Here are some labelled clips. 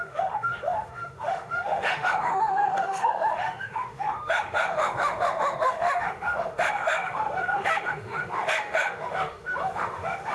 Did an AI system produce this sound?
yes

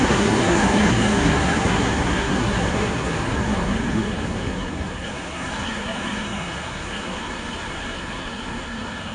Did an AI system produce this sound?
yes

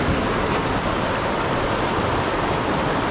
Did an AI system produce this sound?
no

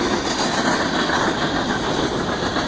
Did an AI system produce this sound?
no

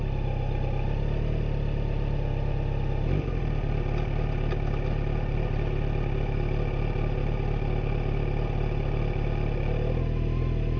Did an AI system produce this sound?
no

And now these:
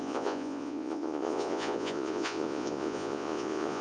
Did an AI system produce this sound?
yes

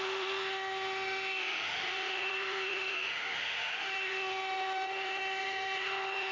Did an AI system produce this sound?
yes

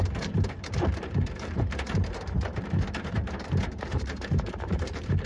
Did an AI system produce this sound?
yes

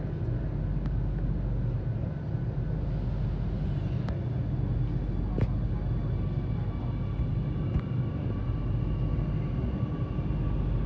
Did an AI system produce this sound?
no